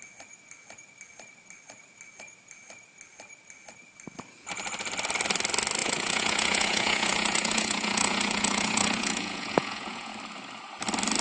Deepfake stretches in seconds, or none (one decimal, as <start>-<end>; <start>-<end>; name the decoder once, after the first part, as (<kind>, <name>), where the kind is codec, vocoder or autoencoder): 5.8-10.1 (vocoder, Vocos)